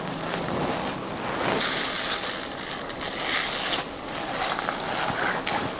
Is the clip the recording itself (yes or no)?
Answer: yes